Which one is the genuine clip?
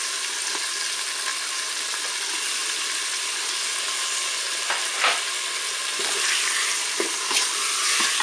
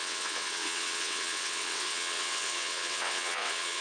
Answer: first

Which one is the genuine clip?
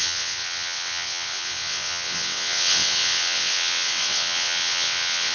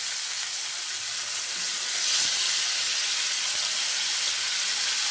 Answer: second